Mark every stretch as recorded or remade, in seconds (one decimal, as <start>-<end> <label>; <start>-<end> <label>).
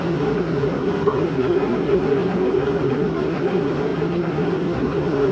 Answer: 0.0-5.3 remade